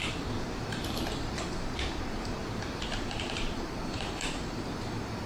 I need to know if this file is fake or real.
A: fake